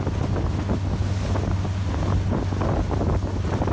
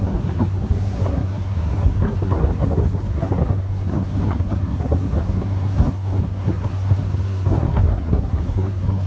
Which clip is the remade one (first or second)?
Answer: second